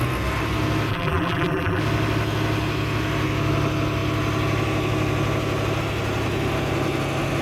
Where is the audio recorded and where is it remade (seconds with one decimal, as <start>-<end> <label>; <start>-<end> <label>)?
0.0-0.9 recorded; 0.9-1.8 remade; 1.8-7.4 recorded